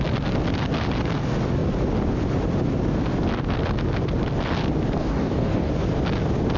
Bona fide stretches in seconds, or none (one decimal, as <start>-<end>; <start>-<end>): 0.0-5.0; 5.7-6.6